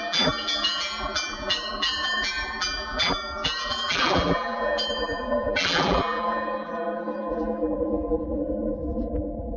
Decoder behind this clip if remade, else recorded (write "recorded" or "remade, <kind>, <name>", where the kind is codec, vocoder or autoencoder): remade, vocoder, BigVGAN v2